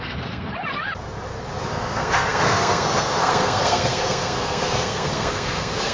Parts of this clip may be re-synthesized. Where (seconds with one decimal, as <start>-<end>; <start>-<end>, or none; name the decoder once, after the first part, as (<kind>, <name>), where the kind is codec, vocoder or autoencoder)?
0.0-0.5 (codec, SNAC); 1.7-5.9